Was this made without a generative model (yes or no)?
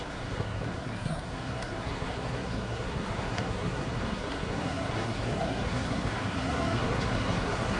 no